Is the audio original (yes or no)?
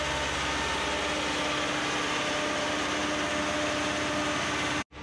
yes